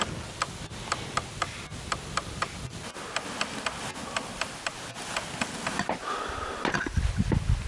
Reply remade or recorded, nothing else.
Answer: recorded